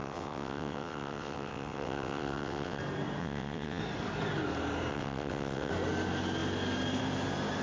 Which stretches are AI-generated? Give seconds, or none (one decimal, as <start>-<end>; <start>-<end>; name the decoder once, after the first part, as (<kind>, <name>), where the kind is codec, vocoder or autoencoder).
0.0-2.8 (vocoder, WaveNeXt); 3.2-3.8; 4.9-5.7